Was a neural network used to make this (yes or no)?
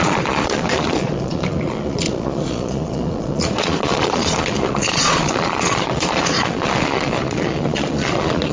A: yes